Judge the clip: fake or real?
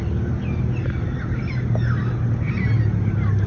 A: real